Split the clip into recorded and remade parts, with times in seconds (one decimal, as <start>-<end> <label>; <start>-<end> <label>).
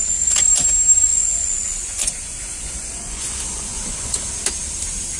0.0-1.1 recorded; 1.1-4.2 remade; 4.2-5.2 recorded